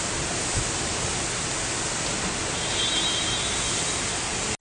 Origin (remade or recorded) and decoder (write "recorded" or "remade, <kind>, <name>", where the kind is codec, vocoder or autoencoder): recorded